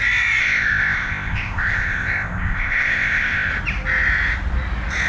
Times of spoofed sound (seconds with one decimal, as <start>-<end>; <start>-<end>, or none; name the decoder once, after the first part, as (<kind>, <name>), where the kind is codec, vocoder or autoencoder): 0.4-3.5 (codec, ZipCodec)